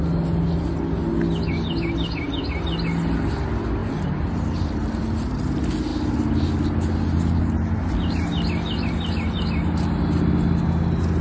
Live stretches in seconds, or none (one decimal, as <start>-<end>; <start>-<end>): 0.0-3.8; 5.0-11.2

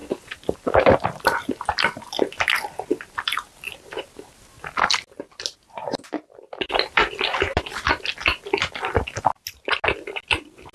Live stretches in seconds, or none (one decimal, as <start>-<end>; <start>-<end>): 1.4-7.0; 9.2-10.7